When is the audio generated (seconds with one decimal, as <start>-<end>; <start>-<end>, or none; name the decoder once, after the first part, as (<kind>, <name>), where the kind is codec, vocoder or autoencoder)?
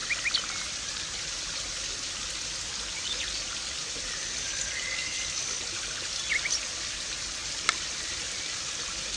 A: 7.4-9.2 (vocoder, BigVGAN v2)